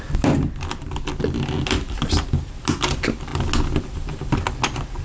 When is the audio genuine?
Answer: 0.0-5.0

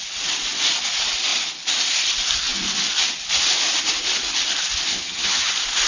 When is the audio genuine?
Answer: 0.0-4.9; 5.5-5.9